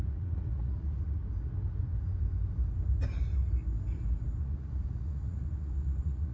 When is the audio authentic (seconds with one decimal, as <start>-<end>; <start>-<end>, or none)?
1.2-4.4